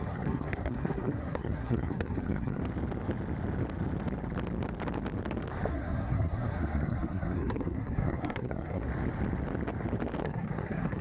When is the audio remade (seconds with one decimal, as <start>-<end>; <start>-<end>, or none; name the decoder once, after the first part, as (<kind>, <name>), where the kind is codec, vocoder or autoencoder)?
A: 0.0-2.6 (codec, SNAC); 5.7-8.9; 10.2-11.0